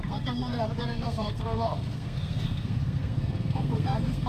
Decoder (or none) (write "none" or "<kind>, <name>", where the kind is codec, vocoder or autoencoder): codec, SNAC